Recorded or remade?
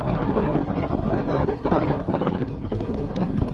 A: remade